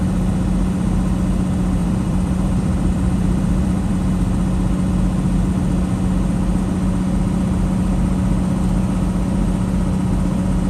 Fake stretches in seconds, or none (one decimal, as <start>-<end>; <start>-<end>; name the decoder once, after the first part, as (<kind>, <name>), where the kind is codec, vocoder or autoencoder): 1.8-3.9 (vocoder, BigVGAN v2)